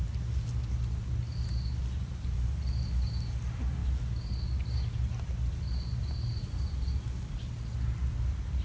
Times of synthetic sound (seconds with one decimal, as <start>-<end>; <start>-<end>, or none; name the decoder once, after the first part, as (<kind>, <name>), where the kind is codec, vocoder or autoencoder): none

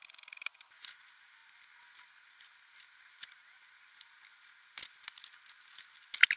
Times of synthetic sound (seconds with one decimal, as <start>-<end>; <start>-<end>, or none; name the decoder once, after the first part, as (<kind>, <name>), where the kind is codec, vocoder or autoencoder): none